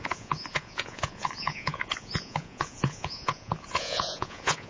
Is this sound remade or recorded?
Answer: remade